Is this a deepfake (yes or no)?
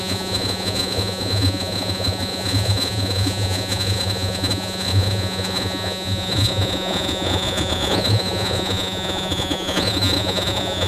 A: yes